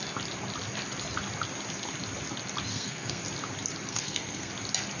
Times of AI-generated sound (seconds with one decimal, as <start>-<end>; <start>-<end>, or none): 2.7-3.2; 3.9-4.5